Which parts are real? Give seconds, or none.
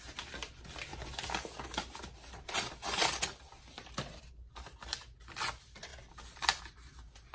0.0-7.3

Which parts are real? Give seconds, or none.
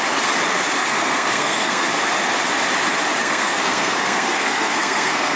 0.0-0.8; 1.9-3.2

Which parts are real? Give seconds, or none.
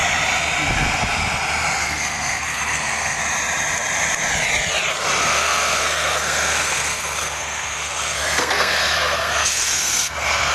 0.0-1.8; 3.2-5.2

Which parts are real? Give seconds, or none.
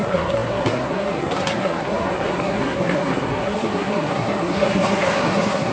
none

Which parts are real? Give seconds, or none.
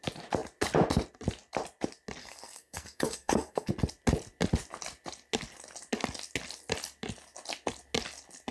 0.0-2.2; 3.7-8.5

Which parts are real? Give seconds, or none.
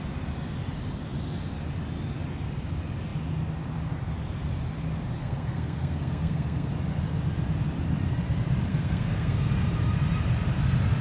0.0-5.2; 6.7-8.7; 9.5-11.0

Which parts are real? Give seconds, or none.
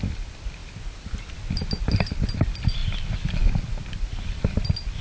0.0-5.0